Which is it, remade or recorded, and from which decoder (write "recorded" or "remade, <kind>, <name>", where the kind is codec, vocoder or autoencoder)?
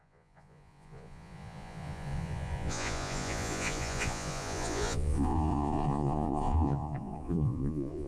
remade, vocoder, Vocos